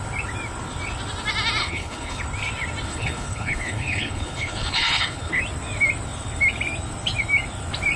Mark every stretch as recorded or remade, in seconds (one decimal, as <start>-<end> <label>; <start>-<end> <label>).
0.0-1.6 recorded; 1.6-2.2 remade; 2.2-2.9 recorded; 2.9-5.4 remade; 5.4-8.0 recorded